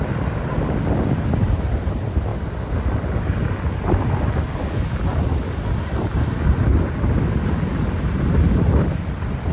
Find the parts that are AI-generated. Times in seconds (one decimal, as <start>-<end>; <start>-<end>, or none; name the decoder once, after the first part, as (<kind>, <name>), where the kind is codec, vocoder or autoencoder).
none